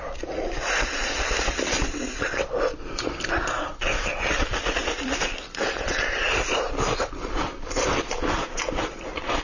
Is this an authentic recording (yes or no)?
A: no